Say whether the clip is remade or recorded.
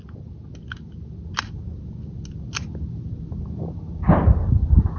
recorded